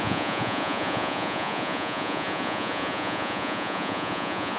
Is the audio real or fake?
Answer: fake